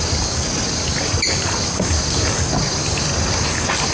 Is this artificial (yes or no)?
no